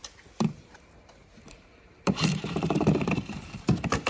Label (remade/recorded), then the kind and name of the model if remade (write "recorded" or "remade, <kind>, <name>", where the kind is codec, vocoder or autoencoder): remade, vocoder, BigVGAN v2